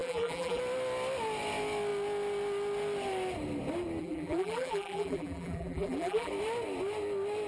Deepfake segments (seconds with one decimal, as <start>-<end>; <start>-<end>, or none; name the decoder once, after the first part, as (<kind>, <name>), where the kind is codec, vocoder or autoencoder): 0.0-0.6 (vocoder, BigVGAN v2); 4.0-6.3